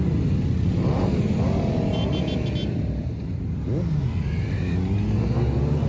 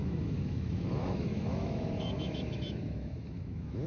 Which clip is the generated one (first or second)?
second